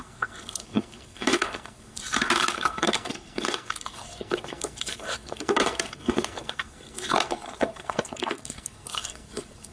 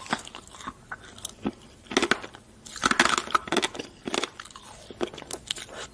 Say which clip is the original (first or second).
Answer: second